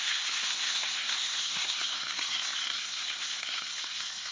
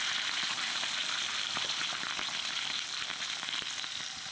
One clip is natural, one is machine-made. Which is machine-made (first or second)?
first